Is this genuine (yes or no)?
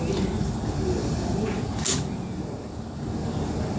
yes